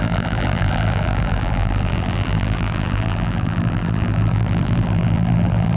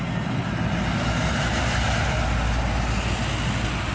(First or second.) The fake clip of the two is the first